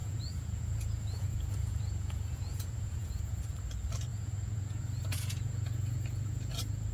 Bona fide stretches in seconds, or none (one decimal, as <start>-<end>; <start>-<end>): 3.4-4.1; 6.5-6.9